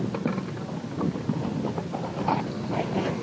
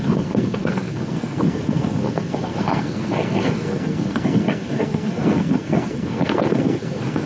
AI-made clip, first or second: second